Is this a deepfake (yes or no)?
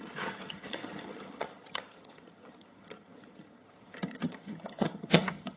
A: yes